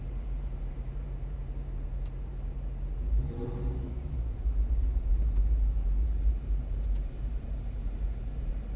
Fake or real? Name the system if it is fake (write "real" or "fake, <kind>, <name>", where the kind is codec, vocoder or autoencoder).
fake, vocoder, BigVGAN v2